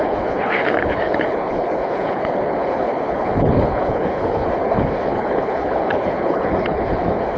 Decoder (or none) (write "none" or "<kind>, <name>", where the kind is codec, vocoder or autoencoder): codec, HILCodec